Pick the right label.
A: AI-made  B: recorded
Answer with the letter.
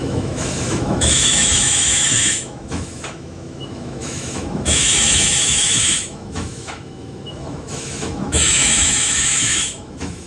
A